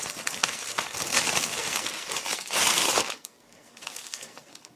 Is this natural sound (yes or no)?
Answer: no